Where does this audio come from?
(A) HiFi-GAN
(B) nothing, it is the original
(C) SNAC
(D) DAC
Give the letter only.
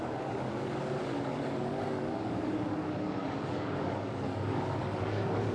D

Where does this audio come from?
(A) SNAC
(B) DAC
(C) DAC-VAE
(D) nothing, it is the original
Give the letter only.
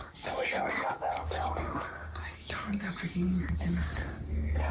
B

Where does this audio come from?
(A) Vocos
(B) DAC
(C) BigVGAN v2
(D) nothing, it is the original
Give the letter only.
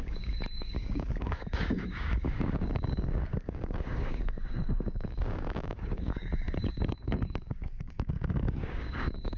B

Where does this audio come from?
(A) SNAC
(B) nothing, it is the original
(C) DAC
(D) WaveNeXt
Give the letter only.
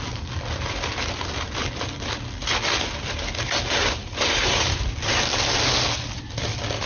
B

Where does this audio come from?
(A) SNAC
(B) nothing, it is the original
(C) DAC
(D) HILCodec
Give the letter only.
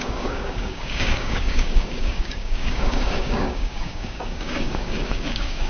C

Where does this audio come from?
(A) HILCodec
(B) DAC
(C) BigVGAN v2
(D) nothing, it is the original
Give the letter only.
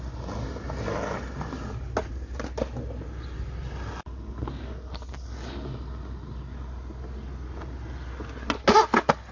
D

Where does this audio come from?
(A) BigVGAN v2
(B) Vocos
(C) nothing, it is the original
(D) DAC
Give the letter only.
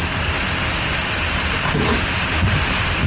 C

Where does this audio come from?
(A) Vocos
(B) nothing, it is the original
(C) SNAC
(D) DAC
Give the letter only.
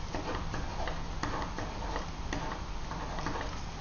B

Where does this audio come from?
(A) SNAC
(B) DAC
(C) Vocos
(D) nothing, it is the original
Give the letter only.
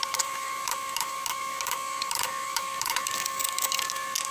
B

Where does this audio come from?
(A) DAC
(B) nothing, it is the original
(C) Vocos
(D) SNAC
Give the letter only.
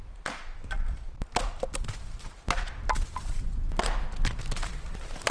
B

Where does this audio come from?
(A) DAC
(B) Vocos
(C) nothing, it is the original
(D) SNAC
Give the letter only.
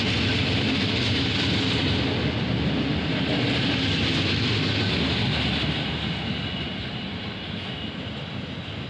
C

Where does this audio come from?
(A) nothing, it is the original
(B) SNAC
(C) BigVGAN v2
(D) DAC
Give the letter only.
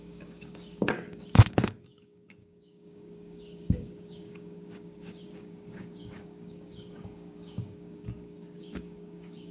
D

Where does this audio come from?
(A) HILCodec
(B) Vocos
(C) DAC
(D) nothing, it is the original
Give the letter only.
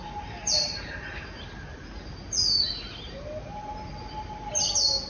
D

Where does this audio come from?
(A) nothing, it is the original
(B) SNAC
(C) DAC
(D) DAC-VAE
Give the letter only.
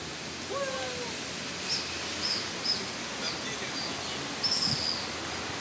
A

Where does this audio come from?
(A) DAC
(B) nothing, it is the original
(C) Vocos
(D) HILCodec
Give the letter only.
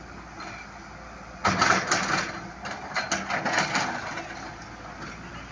B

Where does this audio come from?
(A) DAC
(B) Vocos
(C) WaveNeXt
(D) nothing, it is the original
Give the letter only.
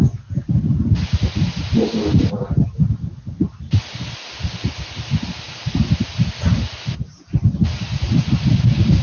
D